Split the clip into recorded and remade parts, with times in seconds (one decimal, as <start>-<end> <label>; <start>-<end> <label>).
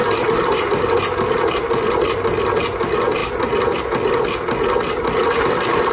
0.0-0.9 remade; 0.9-3.2 recorded; 3.2-3.8 remade; 3.8-5.9 recorded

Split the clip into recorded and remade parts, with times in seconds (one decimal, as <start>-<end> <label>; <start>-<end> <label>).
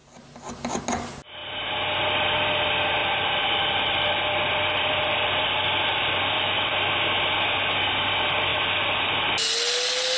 0.0-0.8 remade; 0.8-3.0 recorded; 3.0-6.7 remade; 6.7-8.5 recorded; 8.5-9.1 remade; 9.1-10.2 recorded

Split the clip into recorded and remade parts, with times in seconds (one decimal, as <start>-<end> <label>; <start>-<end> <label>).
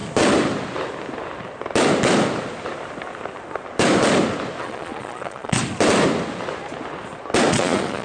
0.0-4.6 recorded; 4.6-5.6 remade; 5.6-7.5 recorded; 7.5-8.0 remade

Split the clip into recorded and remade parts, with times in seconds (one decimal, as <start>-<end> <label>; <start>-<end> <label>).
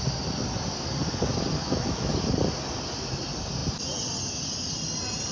0.0-1.6 recorded; 1.6-2.1 remade; 2.1-5.3 recorded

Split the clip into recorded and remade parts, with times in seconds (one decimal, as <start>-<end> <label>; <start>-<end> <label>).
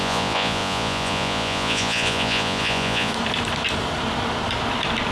0.0-3.1 remade; 3.1-5.1 recorded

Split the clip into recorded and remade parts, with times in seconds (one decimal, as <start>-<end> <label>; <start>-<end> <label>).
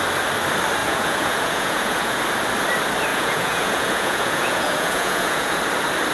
0.0-0.8 recorded; 0.8-2.2 remade; 2.2-3.1 recorded; 3.1-5.6 remade; 5.6-6.1 recorded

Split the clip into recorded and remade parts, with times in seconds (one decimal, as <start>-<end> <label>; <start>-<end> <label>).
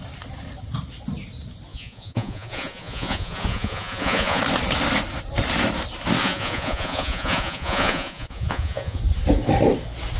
0.0-1.7 recorded; 1.7-4.4 remade; 4.4-6.2 recorded; 6.2-9.0 remade; 9.0-10.2 recorded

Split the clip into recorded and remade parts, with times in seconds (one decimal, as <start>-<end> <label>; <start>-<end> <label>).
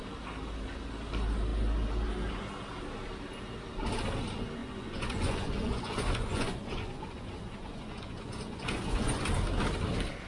0.0-4.6 recorded; 4.6-9.2 remade; 9.2-10.3 recorded